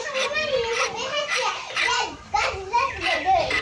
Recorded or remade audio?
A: remade